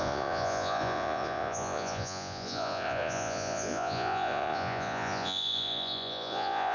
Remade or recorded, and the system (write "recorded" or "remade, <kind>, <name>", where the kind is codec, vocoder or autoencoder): remade, vocoder, Vocos